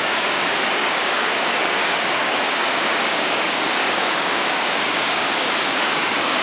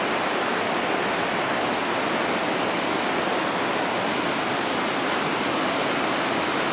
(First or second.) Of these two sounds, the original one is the second